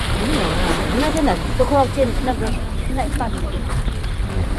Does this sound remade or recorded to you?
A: remade